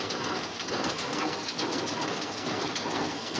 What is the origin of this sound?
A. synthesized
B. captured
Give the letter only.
A